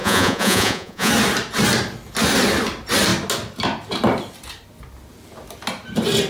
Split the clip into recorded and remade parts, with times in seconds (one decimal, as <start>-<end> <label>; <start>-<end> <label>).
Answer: 0.0-1.1 remade; 1.1-6.3 recorded